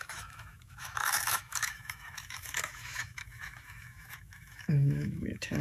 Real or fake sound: fake